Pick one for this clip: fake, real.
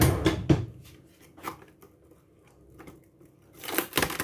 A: real